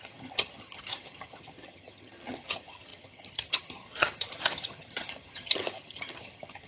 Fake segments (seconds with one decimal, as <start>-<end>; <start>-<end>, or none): 0.0-6.7

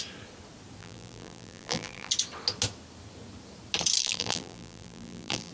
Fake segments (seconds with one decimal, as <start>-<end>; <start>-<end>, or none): 0.8-2.1; 4.0-5.5

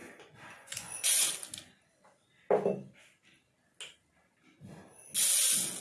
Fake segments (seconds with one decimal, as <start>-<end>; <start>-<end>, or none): 0.0-1.3